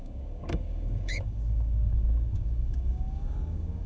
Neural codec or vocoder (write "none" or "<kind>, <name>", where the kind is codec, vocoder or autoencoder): codec, DAC